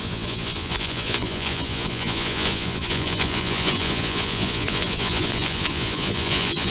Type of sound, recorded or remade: remade